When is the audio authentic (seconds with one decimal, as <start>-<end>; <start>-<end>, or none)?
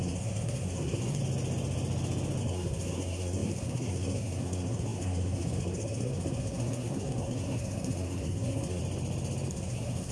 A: 1.2-2.4; 8.8-9.5